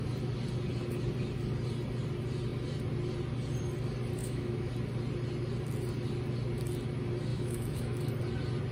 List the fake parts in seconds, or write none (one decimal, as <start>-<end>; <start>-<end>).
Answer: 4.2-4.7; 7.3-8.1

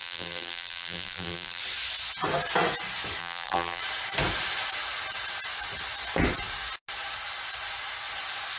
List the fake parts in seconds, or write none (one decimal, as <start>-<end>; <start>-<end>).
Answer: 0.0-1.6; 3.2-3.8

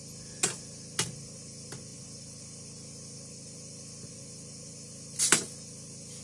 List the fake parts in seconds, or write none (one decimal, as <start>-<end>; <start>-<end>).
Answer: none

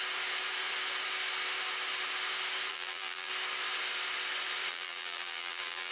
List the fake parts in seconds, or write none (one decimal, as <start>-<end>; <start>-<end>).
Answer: 2.7-3.3; 4.7-5.9